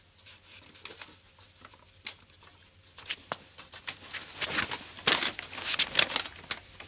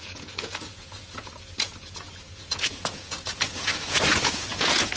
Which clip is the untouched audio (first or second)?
first